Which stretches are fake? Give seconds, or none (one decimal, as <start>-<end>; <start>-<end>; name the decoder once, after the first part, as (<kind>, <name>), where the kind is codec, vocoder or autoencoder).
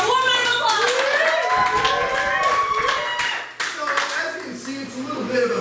none